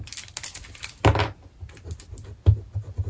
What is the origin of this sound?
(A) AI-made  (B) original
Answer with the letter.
B